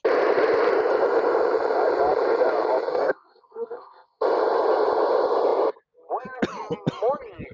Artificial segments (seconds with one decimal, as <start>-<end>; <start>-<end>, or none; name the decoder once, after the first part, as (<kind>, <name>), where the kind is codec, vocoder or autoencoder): 2.9-4.2 (codec, SNAC)